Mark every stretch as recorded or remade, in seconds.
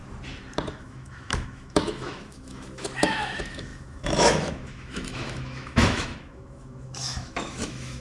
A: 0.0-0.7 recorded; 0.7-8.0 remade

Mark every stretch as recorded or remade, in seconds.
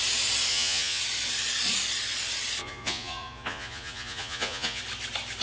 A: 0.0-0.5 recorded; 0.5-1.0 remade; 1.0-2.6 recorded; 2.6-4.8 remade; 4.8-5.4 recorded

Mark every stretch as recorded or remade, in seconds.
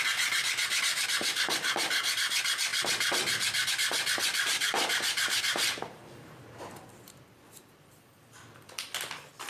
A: 0.0-4.3 recorded; 4.3-6.8 remade; 6.8-9.5 recorded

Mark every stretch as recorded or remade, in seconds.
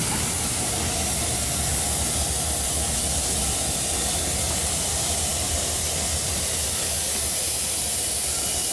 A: 0.0-8.7 recorded